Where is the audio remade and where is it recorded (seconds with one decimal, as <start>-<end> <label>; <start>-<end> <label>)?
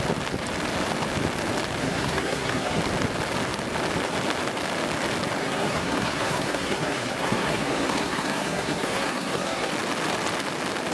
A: 0.0-1.8 recorded; 1.8-2.8 remade; 2.8-5.4 recorded; 5.4-9.7 remade; 9.7-10.9 recorded